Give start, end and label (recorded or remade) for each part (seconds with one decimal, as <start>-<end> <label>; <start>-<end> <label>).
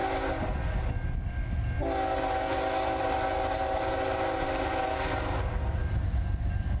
0.0-6.8 recorded